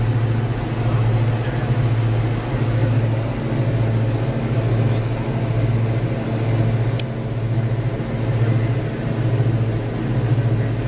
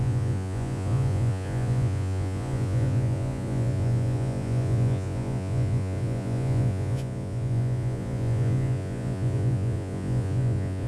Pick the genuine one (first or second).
first